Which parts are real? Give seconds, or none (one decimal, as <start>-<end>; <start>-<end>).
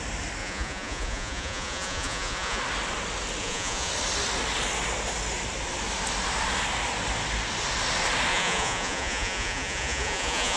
0.0-0.4; 2.6-3.4; 3.9-8.3